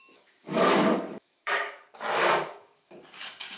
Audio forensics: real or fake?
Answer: fake